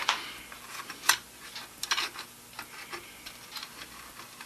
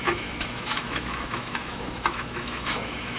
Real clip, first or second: first